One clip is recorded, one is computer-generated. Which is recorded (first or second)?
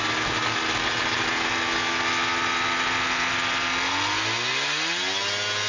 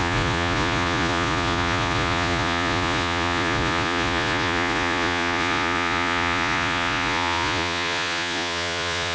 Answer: first